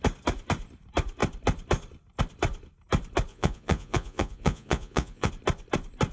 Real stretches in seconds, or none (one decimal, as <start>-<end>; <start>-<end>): 0.0-3.3; 5.3-6.1